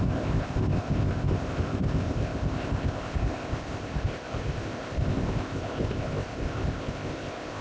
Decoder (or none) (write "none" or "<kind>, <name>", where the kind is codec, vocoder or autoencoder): codec, ZipCodec